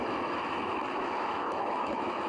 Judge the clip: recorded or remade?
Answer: remade